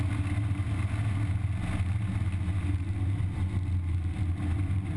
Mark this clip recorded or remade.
recorded